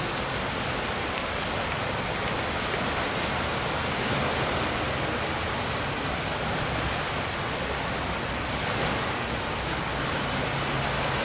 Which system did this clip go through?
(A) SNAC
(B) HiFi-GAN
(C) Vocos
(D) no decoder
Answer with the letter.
D